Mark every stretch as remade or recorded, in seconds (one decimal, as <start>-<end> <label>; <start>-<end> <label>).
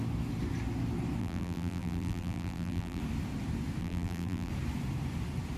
0.0-1.2 recorded; 1.2-3.0 remade; 3.0-3.8 recorded; 3.8-4.5 remade; 4.5-5.6 recorded